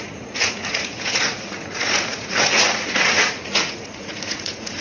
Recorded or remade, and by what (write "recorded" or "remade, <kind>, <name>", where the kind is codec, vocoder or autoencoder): remade, vocoder, Vocos